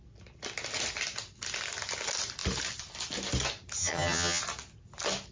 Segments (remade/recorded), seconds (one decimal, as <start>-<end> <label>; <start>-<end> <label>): 0.0-3.8 recorded; 3.8-4.4 remade; 4.4-5.3 recorded